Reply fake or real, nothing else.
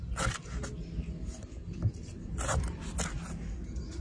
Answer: real